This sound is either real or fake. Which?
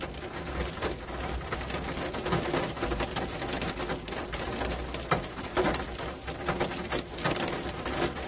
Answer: real